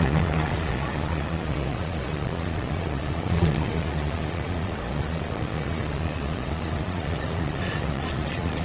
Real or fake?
fake